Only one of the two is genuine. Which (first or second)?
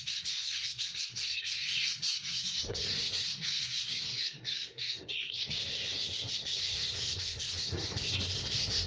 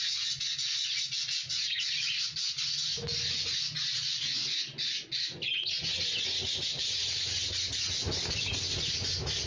second